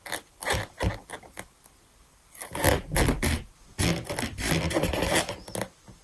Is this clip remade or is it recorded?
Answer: recorded